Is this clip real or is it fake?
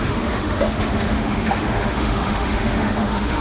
fake